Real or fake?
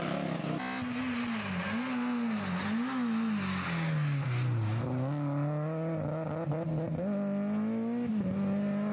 real